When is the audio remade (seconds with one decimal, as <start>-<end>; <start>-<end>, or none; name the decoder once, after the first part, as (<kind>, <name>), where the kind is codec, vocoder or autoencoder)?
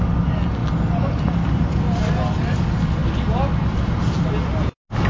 none